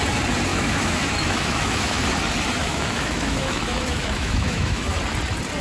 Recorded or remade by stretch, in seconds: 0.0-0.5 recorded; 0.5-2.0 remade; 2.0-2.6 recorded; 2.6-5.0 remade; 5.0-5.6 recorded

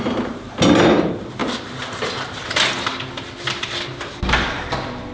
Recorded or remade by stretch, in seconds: 0.0-5.1 recorded

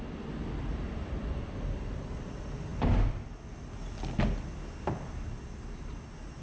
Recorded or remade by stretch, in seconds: 0.0-6.4 recorded

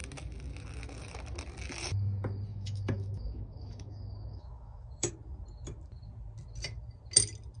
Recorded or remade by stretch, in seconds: 0.0-2.5 recorded; 2.5-5.1 remade; 5.1-7.6 recorded

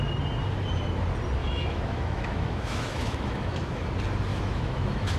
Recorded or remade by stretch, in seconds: 0.0-1.4 recorded; 1.4-3.9 remade; 3.9-4.3 recorded; 4.3-5.2 remade

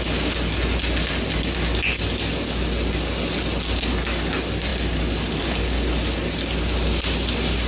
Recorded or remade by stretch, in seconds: 0.0-7.7 recorded

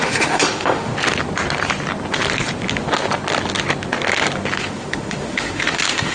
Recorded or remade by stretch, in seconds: 0.0-0.9 remade; 0.9-4.6 recorded; 4.6-6.1 remade

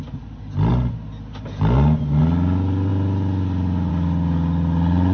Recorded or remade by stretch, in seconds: 0.0-5.1 recorded